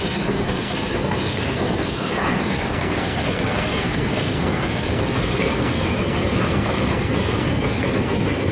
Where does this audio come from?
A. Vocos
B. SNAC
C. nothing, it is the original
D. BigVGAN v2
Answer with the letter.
B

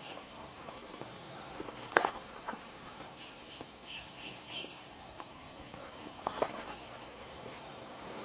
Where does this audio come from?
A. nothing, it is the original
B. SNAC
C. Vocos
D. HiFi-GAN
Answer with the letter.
B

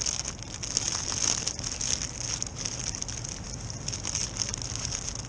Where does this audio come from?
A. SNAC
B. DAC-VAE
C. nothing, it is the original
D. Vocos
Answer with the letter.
C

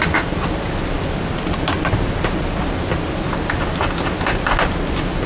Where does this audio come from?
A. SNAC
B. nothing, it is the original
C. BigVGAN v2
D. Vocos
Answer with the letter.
B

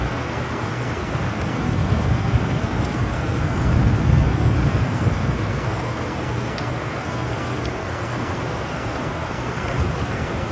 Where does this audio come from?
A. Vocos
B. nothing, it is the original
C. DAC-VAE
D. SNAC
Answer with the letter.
D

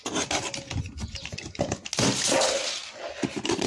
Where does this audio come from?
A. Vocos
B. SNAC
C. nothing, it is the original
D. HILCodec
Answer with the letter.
C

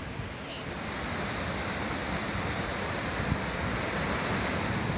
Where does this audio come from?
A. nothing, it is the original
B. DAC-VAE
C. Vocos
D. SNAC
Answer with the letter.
A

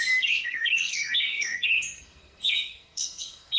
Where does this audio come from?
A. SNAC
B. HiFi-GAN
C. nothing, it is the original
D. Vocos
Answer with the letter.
A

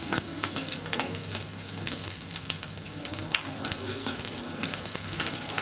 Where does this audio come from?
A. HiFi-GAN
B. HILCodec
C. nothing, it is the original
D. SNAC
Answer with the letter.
D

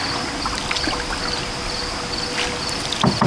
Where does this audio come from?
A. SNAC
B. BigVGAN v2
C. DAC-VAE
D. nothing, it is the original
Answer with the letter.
D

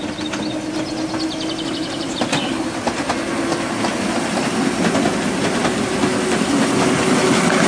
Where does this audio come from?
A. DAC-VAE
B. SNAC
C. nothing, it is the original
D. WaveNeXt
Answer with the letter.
C